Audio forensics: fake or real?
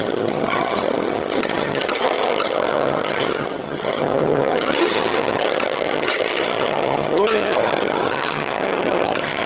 fake